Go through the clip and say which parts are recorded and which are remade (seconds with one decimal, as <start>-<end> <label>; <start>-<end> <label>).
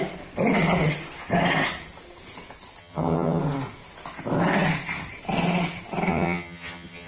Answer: 0.0-2.8 recorded; 2.8-3.4 remade; 3.4-6.1 recorded; 6.1-7.1 remade